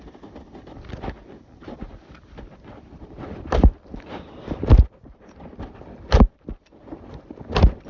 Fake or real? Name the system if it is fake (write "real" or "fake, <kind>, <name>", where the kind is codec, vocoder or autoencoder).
real